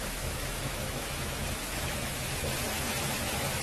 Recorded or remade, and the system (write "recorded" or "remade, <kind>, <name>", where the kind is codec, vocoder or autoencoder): remade, autoencoder, DAC-VAE